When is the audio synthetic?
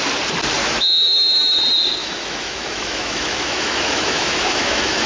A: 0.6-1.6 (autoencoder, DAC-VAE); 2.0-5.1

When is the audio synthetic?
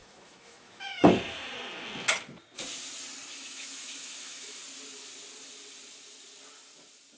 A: 0.0-1.1 (autoencoder, DAC-VAE); 3.3-4.6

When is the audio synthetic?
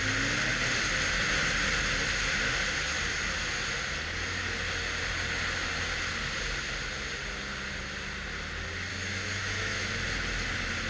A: 8.9-9.9 (autoencoder, DAC-VAE)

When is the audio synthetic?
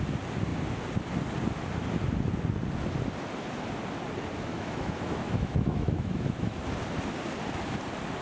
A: 4.5-6.6 (autoencoder, DAC-VAE)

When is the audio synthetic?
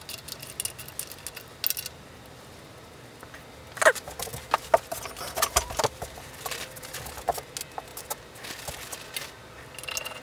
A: none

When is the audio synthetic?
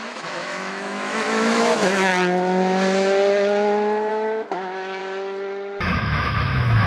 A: 0.0-2.1 (autoencoder, DAC-VAE); 4.1-5.0; 5.9-6.9